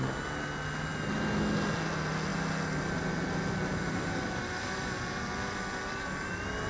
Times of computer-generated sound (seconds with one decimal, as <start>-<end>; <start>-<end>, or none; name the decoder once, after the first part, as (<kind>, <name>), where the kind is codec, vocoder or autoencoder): none